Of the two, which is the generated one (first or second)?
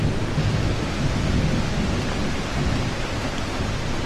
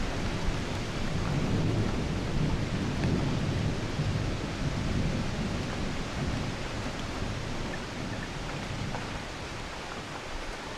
second